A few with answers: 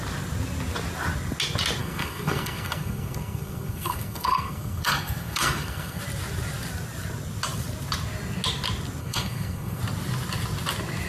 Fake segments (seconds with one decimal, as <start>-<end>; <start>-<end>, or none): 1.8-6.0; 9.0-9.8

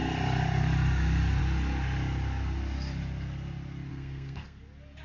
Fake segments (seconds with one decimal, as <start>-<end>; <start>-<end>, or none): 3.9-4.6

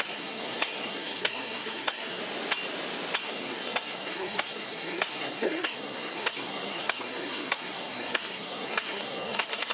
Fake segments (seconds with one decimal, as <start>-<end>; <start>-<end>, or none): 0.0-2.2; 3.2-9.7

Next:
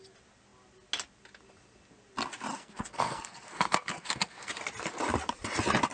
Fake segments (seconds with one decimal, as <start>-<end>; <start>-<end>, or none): 2.5-4.5